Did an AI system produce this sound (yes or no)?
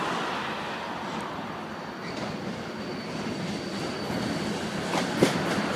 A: no